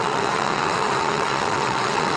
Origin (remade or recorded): remade